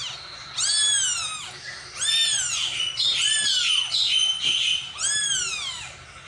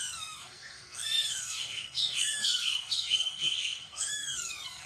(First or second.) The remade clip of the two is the second